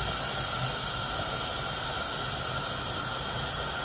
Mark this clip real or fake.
real